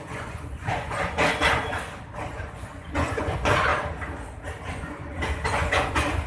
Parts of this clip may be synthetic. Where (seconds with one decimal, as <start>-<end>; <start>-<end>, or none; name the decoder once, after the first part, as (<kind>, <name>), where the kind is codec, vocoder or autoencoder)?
0.0-1.6 (vocoder, Vocos); 2.3-3.7; 4.7-6.3